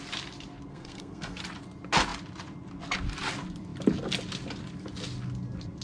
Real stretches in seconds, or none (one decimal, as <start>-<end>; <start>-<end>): 0.0-0.7; 1.4-5.8